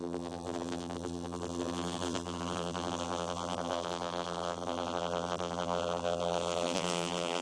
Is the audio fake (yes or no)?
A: yes